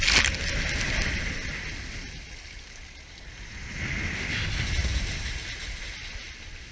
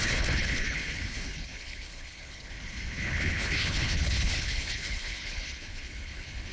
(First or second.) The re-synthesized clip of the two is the second